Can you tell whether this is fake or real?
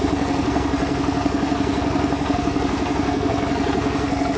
fake